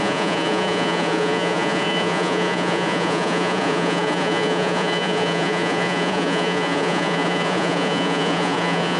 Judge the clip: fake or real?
fake